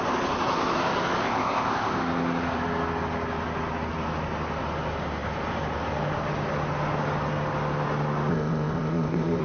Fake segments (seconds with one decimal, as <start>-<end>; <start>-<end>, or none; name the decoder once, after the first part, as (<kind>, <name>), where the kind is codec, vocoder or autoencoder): 1.2-2.0 (codec, ZipCodec); 8.3-9.4